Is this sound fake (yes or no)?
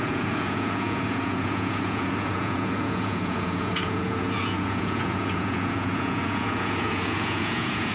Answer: yes